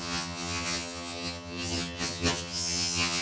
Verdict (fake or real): fake